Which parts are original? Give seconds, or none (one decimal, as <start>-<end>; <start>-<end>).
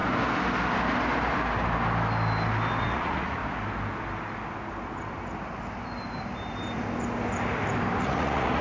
0.0-2.8; 3.4-8.0